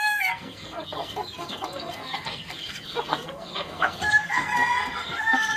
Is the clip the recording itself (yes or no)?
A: no